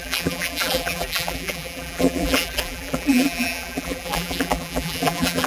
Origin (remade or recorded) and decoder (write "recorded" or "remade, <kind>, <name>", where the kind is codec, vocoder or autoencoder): remade, vocoder, BigVGAN v2